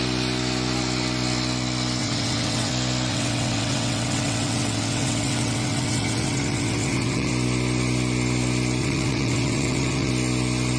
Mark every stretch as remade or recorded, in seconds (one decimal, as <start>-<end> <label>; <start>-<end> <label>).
0.0-2.0 recorded; 2.0-2.7 remade; 2.7-3.1 recorded; 3.1-7.3 remade; 7.3-8.8 recorded; 8.8-10.1 remade; 10.1-10.8 recorded